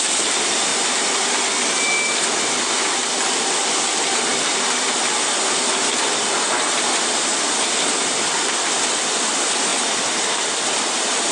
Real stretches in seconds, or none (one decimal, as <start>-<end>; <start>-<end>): 0.7-4.4; 9.7-10.3